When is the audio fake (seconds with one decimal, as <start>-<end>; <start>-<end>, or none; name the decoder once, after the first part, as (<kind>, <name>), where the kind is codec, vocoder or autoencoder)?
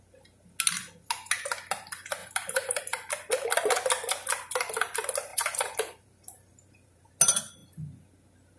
2.2-2.8 (vocoder, BigVGAN v2); 5.3-7.1